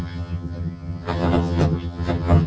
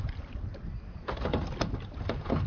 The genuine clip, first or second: second